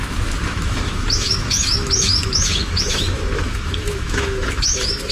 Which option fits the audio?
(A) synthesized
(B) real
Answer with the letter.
A